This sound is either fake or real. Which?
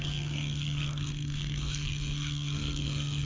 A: fake